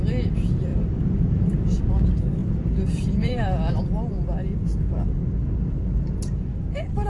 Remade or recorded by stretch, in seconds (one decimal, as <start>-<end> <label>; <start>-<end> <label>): 0.0-0.7 recorded; 0.7-1.9 remade; 1.9-2.4 recorded; 2.4-3.8 remade; 3.8-7.1 recorded